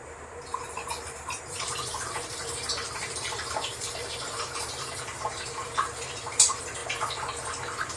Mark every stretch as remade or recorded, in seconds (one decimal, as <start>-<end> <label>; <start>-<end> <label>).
0.0-6.8 remade; 6.8-7.6 recorded; 7.6-8.0 remade

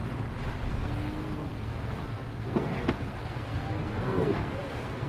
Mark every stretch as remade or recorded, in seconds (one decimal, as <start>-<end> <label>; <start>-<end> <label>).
0.0-0.7 recorded; 0.7-5.1 remade

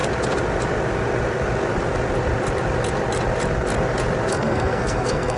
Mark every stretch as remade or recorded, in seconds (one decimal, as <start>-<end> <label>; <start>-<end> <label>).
0.0-4.3 recorded; 4.3-5.4 remade

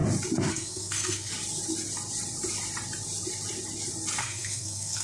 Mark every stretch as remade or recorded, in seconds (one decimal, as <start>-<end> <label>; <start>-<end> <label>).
0.0-0.5 recorded; 0.5-1.3 remade; 1.3-4.2 recorded; 4.2-5.0 remade

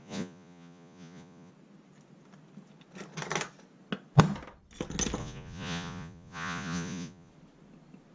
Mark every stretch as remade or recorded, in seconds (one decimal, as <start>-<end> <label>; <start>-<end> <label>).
0.0-1.5 remade; 1.5-5.2 recorded; 5.2-7.3 remade; 7.3-8.1 recorded

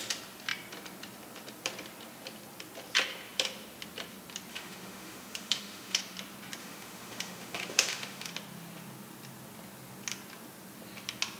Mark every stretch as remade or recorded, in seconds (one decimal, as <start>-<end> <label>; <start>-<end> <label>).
0.0-4.5 recorded; 4.5-6.0 remade; 6.0-6.6 recorded; 6.6-8.3 remade; 8.3-11.4 recorded

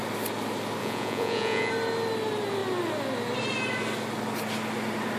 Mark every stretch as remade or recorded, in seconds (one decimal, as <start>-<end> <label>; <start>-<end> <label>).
0.0-0.8 recorded; 0.8-1.7 remade; 1.7-5.2 recorded

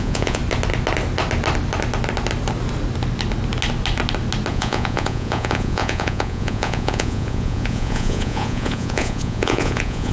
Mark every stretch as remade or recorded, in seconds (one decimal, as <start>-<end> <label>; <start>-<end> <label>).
0.0-0.4 remade; 0.4-4.5 recorded; 4.5-10.1 remade